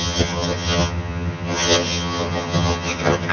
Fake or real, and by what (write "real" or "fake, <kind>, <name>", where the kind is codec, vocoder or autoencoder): fake, vocoder, HiFi-GAN